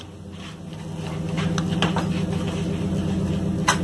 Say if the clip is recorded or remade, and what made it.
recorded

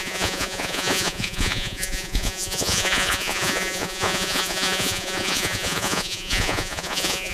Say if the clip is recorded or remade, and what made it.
remade, vocoder, Vocos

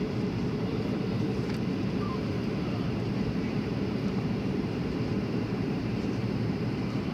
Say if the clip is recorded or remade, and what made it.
remade, vocoder, BigVGAN v2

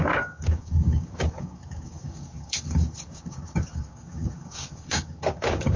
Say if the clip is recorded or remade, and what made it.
remade, codec, DAC